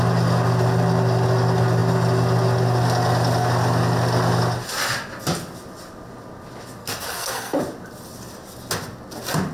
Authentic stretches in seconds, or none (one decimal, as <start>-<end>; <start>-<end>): 0.0-6.8; 7.6-9.5